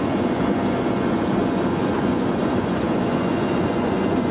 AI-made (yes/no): yes